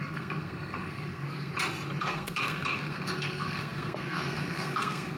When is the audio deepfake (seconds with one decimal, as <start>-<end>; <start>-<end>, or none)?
0.0-1.5; 2.0-5.2